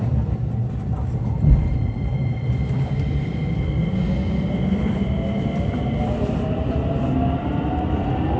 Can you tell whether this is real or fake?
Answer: real